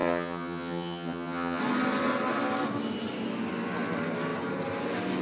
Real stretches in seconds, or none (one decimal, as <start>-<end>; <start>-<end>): 1.6-5.2